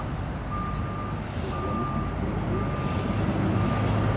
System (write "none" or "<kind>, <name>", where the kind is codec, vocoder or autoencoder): none